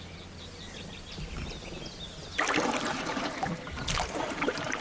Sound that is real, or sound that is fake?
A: real